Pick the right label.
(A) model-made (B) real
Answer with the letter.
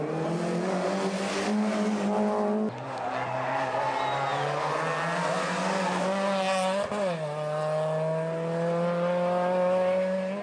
B